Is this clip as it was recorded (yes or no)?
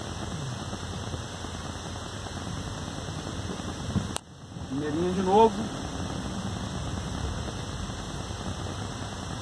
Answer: yes